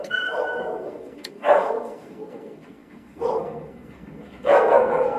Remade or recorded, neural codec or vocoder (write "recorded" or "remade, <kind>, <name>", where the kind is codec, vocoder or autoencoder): remade, codec, SNAC